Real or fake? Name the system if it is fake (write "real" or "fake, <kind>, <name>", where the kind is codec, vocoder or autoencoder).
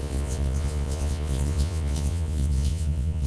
fake, vocoder, Vocos